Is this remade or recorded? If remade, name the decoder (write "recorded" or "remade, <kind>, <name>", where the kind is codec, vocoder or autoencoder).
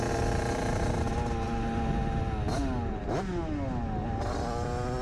recorded